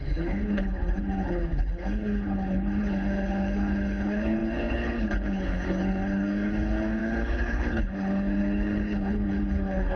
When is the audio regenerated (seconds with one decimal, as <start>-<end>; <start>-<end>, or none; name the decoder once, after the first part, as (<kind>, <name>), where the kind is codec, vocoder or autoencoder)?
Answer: 0.0-10.0 (codec, HILCodec)